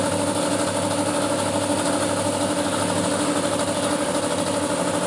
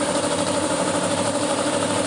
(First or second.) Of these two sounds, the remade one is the second